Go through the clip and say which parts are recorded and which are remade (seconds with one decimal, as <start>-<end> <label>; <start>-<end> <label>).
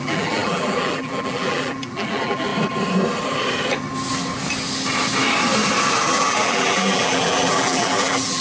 0.0-2.5 remade; 2.5-6.0 recorded; 6.0-8.4 remade